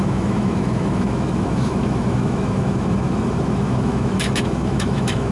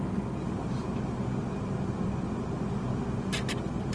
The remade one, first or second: first